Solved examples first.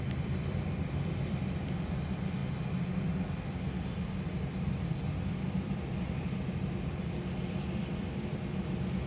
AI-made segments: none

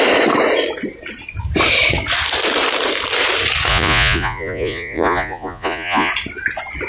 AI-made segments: 3.7-6.1 (vocoder, Vocos)

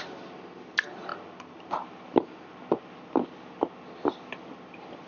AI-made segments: none

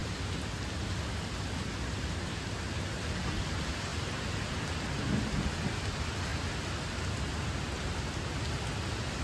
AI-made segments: none

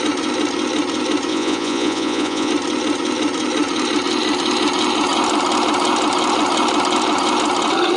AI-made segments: 1.3-2.5 (vocoder, Vocos)

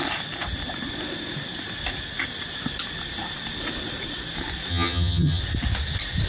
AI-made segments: 4.7-5.4 (vocoder, HiFi-GAN)

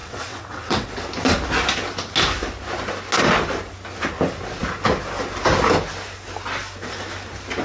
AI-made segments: 0.0-0.9 (vocoder, WaveNeXt)